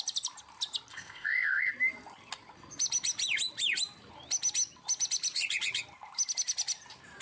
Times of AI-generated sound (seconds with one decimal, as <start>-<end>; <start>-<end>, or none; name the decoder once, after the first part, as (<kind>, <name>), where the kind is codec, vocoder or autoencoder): 0.9-1.7 (codec, ZipCodec)